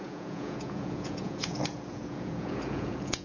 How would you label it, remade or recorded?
remade